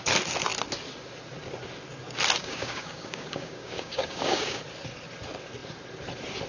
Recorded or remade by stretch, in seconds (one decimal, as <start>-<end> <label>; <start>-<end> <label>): 0.0-2.4 recorded; 2.4-4.6 remade; 4.6-6.5 recorded